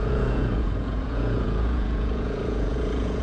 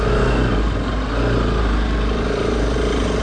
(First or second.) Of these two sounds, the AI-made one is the first